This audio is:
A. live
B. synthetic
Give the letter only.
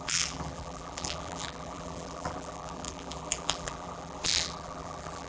B